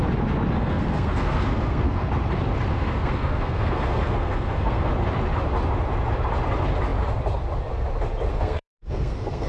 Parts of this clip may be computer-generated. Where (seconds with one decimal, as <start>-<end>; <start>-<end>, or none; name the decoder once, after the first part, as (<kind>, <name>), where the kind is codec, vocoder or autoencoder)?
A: 0.6-2.1 (codec, SNAC); 2.7-4.9; 8.3-9.5